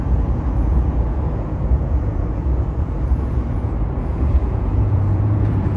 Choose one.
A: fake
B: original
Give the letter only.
A